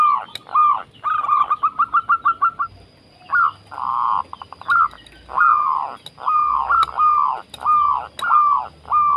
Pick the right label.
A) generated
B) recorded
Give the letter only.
B